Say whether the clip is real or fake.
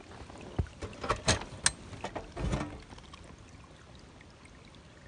real